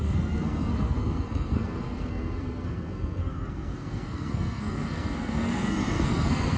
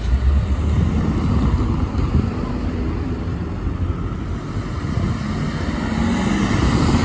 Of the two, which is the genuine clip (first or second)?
second